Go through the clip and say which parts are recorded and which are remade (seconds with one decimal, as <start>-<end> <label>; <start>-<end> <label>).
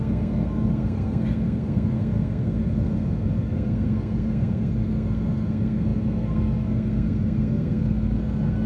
0.0-8.7 remade